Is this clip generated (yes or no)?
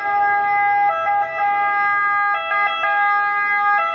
no